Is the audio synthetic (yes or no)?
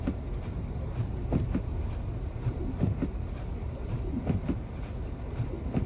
no